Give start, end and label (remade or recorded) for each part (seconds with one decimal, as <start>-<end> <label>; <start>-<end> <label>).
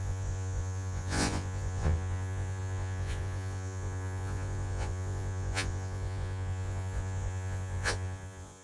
0.0-8.6 remade